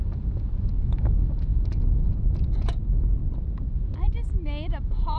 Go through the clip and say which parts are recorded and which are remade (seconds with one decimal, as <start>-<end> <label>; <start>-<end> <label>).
0.0-3.2 remade; 3.2-4.8 recorded; 4.8-5.2 remade